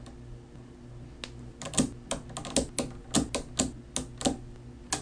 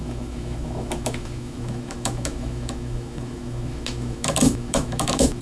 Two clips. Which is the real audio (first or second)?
first